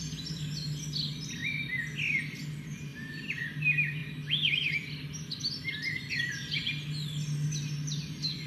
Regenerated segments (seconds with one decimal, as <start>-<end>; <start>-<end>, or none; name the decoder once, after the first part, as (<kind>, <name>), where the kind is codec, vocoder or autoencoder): 2.9-3.4 (vocoder, BigVGAN v2)